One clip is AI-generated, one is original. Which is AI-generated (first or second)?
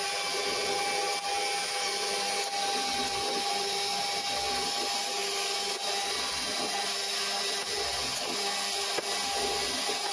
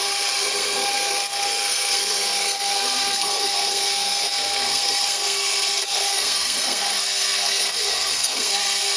second